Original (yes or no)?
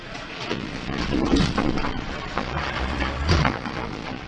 no